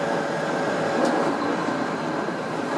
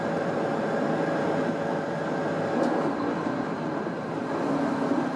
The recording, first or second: second